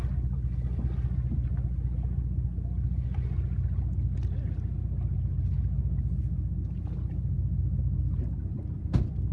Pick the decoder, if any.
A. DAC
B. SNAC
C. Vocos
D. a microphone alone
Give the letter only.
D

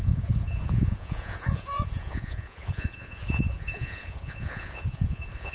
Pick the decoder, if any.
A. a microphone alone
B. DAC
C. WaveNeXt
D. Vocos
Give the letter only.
D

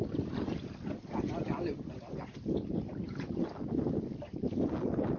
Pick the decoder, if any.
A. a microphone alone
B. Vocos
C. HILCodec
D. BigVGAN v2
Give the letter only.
A